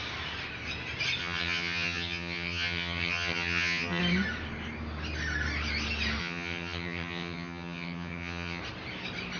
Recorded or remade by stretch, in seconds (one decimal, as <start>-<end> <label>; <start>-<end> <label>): 0.0-1.2 recorded; 1.2-4.0 remade; 4.0-6.2 recorded; 6.2-8.6 remade; 8.6-9.4 recorded